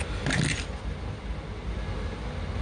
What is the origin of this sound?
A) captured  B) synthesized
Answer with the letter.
A